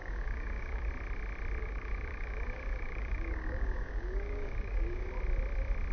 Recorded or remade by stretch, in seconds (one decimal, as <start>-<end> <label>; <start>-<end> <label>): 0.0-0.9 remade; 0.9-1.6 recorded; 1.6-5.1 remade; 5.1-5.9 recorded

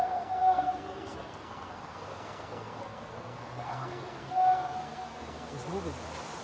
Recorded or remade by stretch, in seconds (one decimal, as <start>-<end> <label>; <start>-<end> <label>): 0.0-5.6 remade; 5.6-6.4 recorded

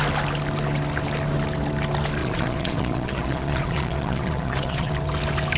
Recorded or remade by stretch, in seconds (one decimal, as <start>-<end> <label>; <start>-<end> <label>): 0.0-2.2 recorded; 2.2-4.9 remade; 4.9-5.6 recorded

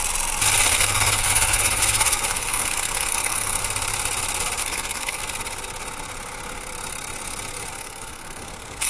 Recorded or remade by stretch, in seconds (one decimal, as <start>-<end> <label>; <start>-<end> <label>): 0.0-0.7 recorded; 0.7-3.6 remade; 3.6-4.6 recorded; 4.6-5.2 remade; 5.2-7.7 recorded; 7.7-8.9 remade

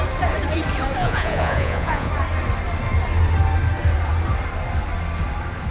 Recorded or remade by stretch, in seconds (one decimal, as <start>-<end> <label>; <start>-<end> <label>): 0.0-1.0 recorded; 1.0-2.1 remade; 2.1-5.7 recorded

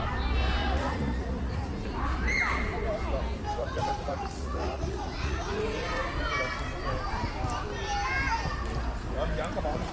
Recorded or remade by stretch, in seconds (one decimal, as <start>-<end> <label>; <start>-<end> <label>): 0.0-0.6 recorded; 0.6-1.7 remade; 1.7-3.6 recorded; 3.6-5.6 remade; 5.6-9.9 recorded